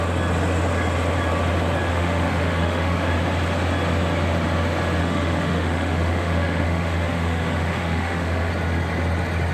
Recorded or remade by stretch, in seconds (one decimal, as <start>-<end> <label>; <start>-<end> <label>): 0.0-1.9 recorded; 1.9-3.1 remade; 3.1-5.0 recorded; 5.0-8.5 remade; 8.5-9.5 recorded